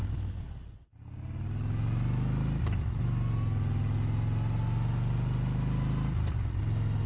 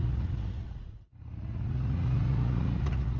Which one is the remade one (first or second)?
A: second